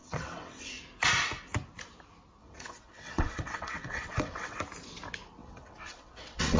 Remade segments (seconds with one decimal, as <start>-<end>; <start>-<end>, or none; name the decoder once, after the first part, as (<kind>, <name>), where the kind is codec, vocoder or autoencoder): 0.0-0.8 (vocoder, WaveNeXt); 2.4-4.6; 5.4-6.6